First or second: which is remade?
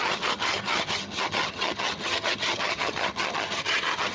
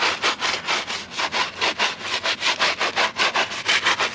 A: first